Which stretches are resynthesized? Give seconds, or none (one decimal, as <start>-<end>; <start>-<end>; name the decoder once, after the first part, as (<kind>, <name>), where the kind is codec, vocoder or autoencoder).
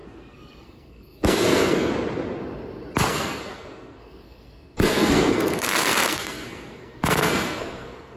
0.0-1.9 (codec, SNAC); 3.1-8.2